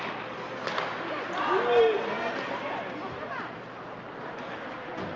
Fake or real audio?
real